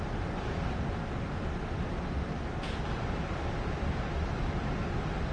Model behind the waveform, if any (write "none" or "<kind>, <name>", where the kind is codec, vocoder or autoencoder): none